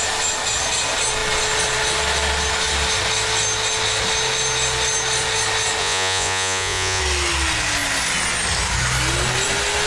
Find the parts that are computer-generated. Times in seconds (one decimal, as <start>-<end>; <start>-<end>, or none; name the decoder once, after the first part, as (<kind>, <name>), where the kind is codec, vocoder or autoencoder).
5.8-7.0 (vocoder, Vocos)